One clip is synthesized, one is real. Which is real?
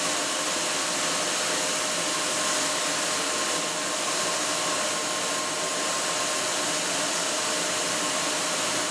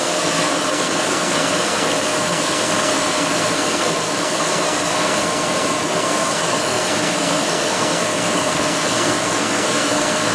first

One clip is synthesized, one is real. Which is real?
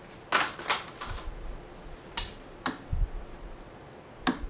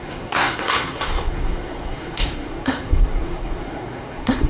first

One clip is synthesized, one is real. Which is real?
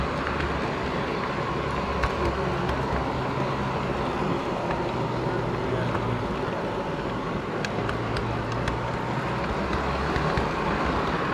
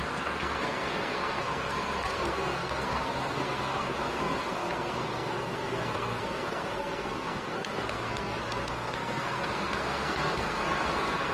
first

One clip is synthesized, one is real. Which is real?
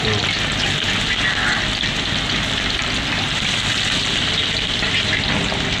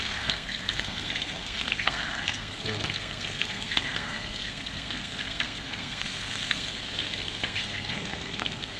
first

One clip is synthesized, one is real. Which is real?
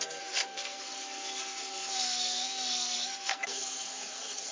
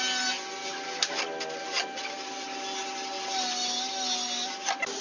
second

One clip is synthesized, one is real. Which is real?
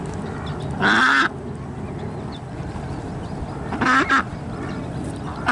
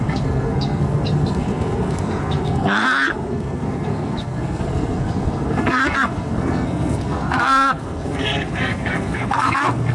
first